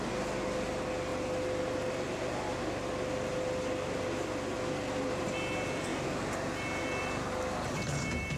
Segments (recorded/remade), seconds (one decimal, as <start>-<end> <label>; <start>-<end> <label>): 0.0-8.4 recorded